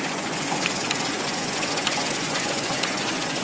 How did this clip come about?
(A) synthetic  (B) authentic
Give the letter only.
A